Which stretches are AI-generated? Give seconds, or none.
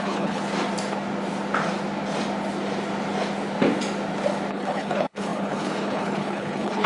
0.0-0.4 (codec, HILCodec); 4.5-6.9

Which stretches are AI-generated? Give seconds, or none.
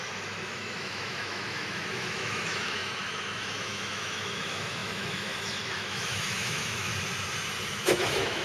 0.0-6.9 (autoencoder, DAC-VAE); 7.7-8.4